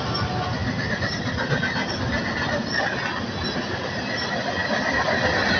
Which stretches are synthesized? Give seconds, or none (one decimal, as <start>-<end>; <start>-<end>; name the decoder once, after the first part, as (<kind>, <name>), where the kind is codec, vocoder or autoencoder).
none